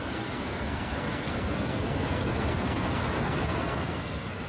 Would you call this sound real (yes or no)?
no